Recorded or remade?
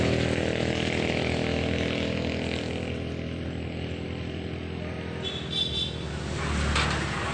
recorded